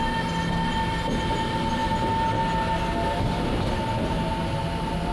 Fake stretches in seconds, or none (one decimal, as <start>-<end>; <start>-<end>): none